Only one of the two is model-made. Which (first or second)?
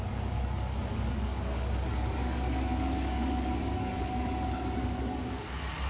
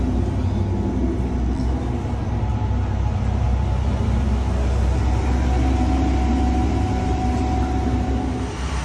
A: first